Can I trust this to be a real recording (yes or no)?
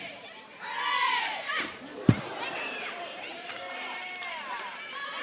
no